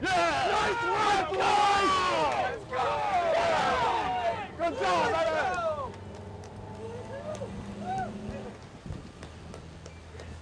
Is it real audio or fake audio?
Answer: real